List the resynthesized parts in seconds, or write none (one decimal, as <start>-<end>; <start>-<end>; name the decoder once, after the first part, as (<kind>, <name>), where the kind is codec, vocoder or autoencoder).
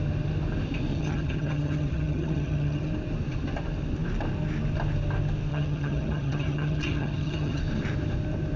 0.9-2.9 (vocoder, HiFi-GAN); 5.5-7.6